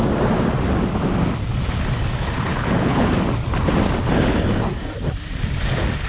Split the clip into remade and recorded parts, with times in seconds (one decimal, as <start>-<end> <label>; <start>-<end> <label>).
0.0-2.5 recorded; 2.5-3.1 remade; 3.1-6.1 recorded